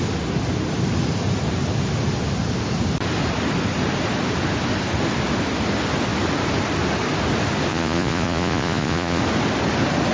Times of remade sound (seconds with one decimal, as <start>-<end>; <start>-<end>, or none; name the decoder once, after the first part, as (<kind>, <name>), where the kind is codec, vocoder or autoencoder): 7.7-9.2 (vocoder, Vocos)